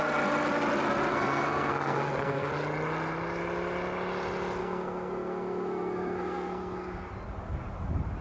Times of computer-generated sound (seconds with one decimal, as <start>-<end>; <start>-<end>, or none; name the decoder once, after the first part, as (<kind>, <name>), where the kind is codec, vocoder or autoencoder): 1.1-2.5 (codec, SNAC); 4.6-7.1